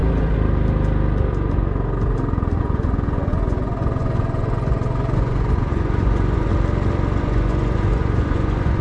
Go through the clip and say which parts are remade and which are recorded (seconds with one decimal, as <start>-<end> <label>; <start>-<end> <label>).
0.0-2.6 recorded; 2.6-6.5 remade; 6.5-7.2 recorded; 7.2-8.8 remade